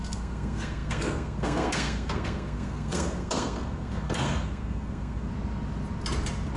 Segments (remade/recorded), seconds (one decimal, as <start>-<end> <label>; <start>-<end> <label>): 0.0-5.3 remade; 5.3-6.6 recorded